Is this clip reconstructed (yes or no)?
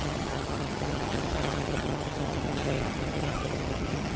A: yes